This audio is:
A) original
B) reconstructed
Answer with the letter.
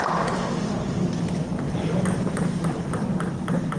A